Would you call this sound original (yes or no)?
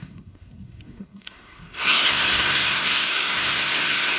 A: no